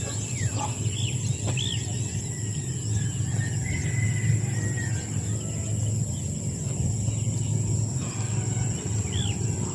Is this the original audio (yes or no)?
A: yes